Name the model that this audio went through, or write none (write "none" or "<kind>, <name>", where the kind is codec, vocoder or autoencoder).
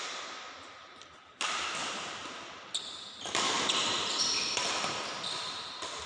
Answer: none